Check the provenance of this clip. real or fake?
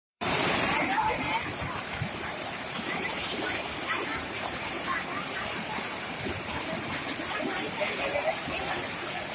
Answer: fake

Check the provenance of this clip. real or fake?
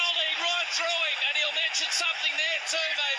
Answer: fake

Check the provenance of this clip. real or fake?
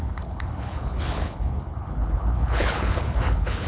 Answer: fake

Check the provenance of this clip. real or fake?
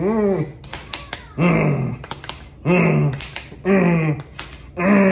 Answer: real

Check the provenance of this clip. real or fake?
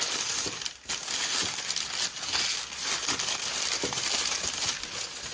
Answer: real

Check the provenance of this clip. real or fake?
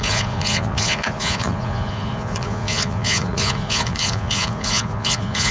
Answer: fake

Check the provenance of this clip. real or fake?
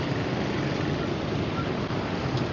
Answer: real